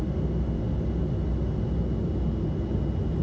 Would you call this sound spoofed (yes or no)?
no